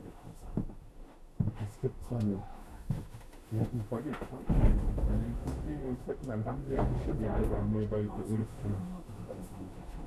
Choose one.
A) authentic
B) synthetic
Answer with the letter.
B